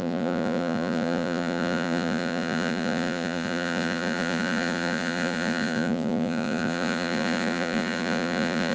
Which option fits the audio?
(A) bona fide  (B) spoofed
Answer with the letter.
B